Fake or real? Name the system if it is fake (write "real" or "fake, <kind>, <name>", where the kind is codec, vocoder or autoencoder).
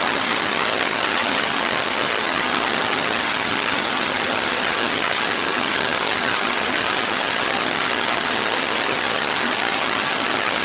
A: fake, vocoder, HiFi-GAN